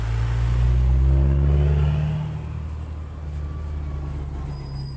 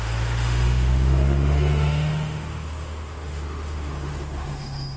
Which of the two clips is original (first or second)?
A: first